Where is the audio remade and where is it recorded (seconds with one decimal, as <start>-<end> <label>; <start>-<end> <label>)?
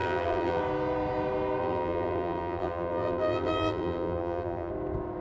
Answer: 0.0-0.6 remade; 0.6-1.6 recorded; 1.6-4.7 remade; 4.7-5.2 recorded